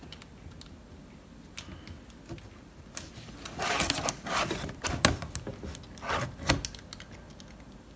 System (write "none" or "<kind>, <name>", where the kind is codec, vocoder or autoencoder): none